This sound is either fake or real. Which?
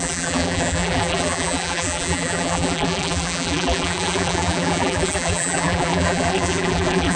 fake